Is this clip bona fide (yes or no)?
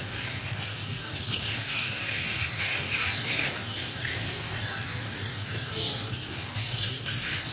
no